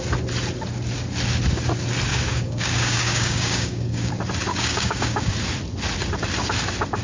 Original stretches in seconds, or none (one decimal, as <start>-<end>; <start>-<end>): 0.0-2.1; 4.1-4.5; 5.3-7.0